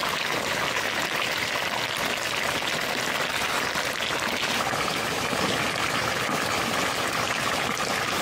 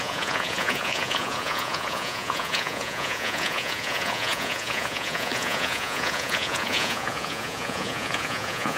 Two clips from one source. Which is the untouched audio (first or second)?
first